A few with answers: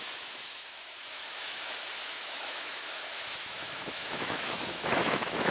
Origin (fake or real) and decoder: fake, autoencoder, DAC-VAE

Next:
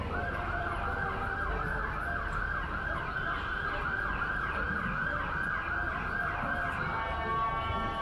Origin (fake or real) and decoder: real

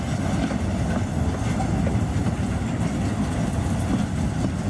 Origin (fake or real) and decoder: real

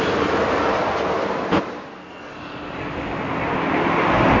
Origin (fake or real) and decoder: real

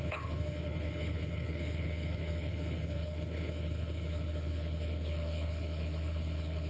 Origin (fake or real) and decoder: fake, codec, HILCodec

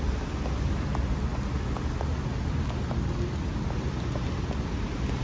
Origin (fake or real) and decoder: real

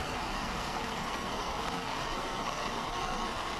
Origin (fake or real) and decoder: fake, codec, SNAC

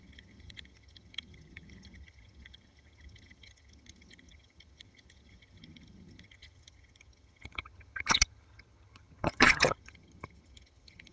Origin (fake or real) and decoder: fake, vocoder, HiFi-GAN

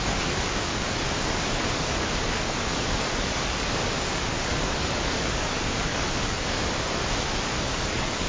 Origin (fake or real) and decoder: fake, codec, DAC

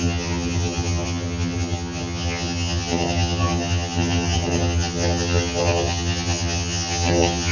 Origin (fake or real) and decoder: fake, vocoder, HiFi-GAN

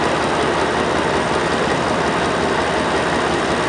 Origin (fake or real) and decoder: real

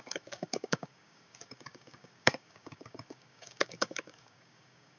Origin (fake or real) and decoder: fake, codec, DAC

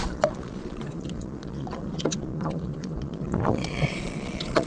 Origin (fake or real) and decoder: fake, vocoder, Vocos